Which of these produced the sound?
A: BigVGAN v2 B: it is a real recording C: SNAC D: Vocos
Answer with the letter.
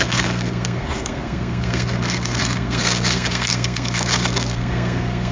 C